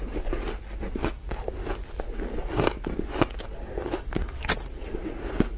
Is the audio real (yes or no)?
yes